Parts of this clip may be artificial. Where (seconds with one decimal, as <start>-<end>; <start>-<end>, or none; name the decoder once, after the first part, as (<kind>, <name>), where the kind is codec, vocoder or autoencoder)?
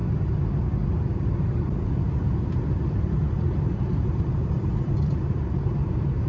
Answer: 2.8-6.3 (vocoder, BigVGAN v2)